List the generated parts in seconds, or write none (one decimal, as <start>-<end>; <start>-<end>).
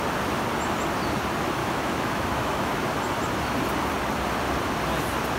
1.6-2.7